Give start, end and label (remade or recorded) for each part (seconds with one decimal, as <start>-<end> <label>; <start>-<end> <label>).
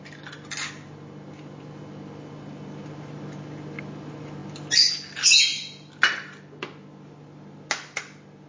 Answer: 0.0-8.5 recorded